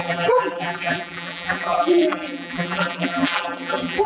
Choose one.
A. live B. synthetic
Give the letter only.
B